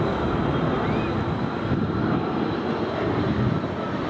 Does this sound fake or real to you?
real